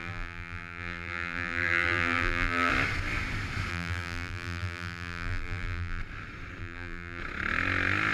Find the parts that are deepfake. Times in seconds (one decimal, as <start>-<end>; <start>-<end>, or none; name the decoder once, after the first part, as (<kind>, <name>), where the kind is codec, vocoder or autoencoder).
0.0-2.7 (vocoder, BigVGAN v2); 3.7-6.0; 6.6-7.2